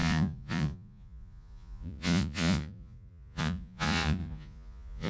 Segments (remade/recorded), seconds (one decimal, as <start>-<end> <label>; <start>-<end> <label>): 0.0-5.1 remade